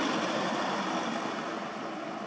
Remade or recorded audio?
recorded